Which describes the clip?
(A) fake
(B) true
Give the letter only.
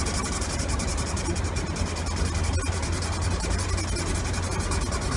B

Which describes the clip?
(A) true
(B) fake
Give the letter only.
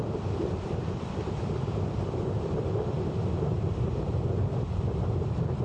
A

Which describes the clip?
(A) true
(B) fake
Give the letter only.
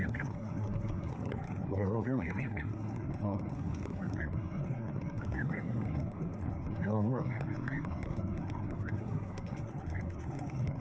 B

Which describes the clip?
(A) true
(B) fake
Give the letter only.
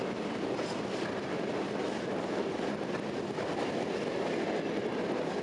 A